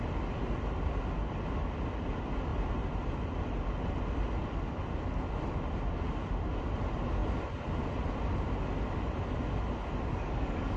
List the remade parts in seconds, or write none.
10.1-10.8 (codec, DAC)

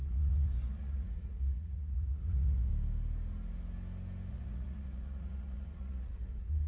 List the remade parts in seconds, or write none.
0.0-2.7 (vocoder, Vocos); 4.3-6.7

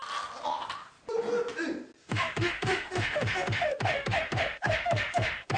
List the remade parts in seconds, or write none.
2.0-5.6 (autoencoder, DAC-VAE)

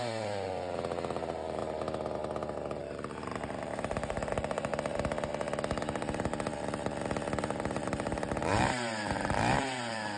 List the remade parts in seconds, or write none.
0.0-1.6 (vocoder, BigVGAN v2); 2.8-4.7; 5.8-6.3; 7.4-10.2

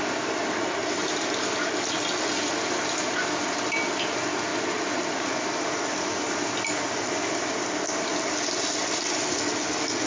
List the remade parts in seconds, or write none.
none

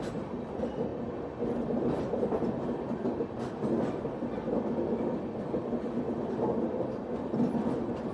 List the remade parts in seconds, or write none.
none

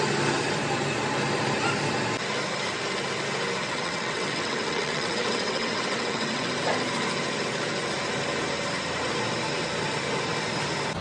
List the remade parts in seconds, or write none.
3.6-6.5 (vocoder, WaveNeXt)